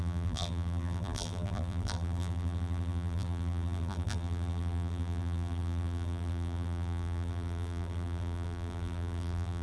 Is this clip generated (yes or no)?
yes